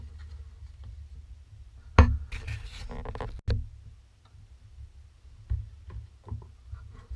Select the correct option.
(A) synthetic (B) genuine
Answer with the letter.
B